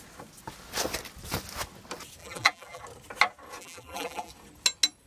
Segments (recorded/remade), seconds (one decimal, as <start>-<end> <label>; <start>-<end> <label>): 0.0-2.2 recorded; 2.2-2.8 remade; 2.8-3.6 recorded; 3.6-4.3 remade; 4.3-5.1 recorded